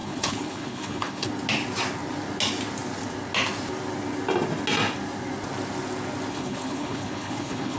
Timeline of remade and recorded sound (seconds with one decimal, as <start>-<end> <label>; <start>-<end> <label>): 0.0-1.3 remade; 1.3-6.3 recorded; 6.3-7.8 remade